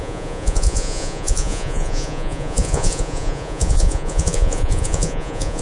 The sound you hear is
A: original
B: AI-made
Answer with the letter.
B